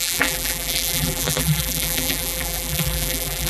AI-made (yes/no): yes